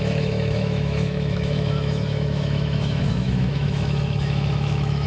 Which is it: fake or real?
fake